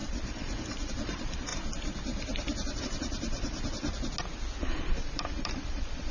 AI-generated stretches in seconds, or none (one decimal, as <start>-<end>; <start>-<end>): 0.0-3.9; 4.6-6.1